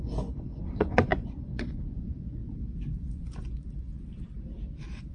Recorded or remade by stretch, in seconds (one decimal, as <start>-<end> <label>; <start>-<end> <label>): 0.0-2.4 remade; 2.4-3.0 recorded; 3.0-3.9 remade; 3.9-5.1 recorded